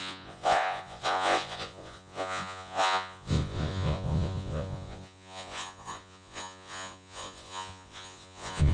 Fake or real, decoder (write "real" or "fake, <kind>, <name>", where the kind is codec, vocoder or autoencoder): fake, vocoder, Vocos